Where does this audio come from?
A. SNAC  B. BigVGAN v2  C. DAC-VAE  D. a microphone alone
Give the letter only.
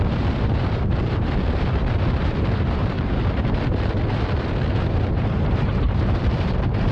B